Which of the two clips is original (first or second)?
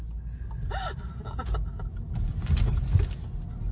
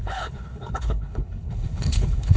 first